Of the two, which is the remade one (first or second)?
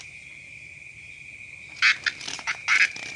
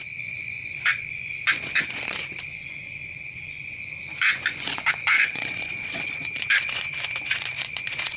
second